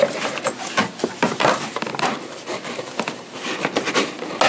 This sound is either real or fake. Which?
real